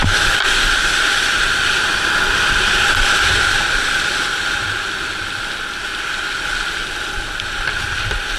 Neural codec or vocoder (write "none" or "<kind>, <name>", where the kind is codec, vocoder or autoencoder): none